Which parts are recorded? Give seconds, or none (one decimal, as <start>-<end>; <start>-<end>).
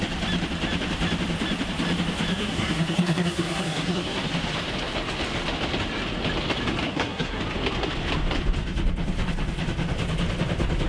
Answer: 0.0-2.3; 4.2-6.8; 7.4-10.9